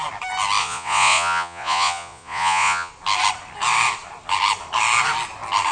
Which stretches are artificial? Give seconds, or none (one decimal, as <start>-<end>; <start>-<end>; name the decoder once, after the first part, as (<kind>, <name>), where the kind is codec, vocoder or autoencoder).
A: 0.6-2.9 (vocoder, Vocos)